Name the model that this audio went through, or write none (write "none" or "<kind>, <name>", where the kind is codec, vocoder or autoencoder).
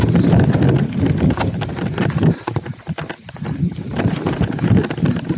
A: none